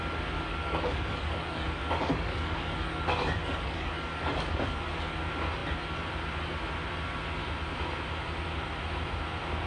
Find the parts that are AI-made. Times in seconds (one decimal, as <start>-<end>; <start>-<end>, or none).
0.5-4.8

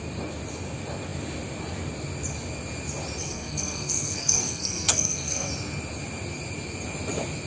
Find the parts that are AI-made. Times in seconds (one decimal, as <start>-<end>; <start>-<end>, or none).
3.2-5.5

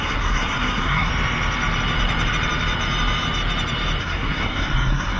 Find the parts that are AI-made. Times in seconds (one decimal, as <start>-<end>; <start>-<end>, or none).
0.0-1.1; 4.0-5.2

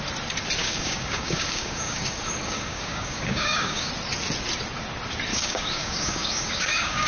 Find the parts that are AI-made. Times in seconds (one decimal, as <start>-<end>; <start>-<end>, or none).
0.6-3.9; 5.3-7.1

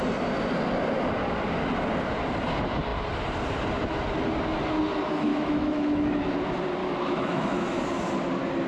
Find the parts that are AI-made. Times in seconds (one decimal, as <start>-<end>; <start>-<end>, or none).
5.3-6.3; 6.8-7.8